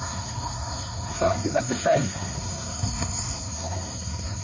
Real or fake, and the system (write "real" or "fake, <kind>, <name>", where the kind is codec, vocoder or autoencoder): fake, codec, SNAC